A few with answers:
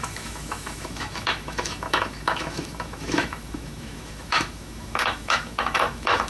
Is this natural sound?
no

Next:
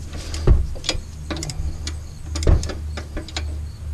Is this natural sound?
yes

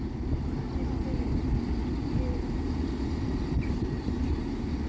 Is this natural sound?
yes